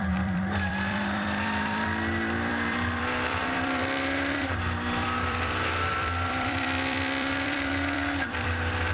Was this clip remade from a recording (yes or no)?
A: yes